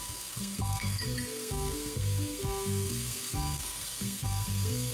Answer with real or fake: fake